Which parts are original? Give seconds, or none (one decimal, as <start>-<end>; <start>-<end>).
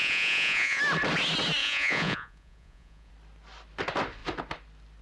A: 0.8-1.6; 3.1-5.0